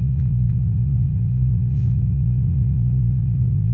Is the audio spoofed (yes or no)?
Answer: yes